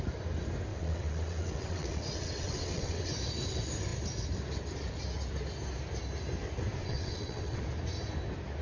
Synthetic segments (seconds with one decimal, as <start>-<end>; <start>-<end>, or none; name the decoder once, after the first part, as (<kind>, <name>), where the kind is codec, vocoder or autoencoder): 0.7-3.1 (vocoder, WaveNeXt); 6.8-7.6